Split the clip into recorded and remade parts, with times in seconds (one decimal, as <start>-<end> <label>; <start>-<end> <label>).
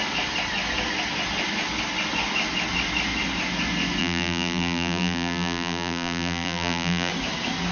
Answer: 0.0-4.0 recorded; 4.0-7.1 remade; 7.1-7.7 recorded